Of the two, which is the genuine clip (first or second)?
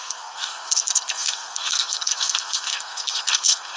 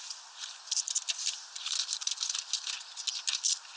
second